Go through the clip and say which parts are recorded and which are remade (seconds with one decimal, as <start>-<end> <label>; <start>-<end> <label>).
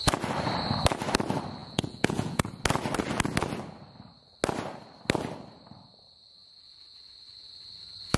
0.0-1.6 recorded; 1.6-2.5 remade; 2.5-8.2 recorded